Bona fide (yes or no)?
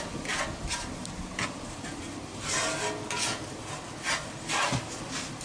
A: yes